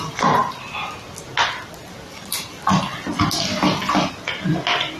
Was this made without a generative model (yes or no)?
yes